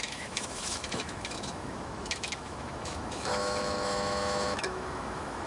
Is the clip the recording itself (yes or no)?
no